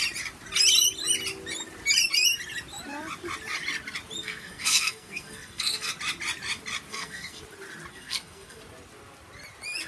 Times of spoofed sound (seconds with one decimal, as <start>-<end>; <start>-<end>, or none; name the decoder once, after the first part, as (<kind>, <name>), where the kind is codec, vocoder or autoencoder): 4.2-5.9 (codec, SNAC); 6.9-7.4; 7.9-8.6